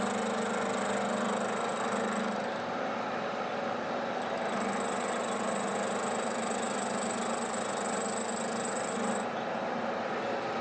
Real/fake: real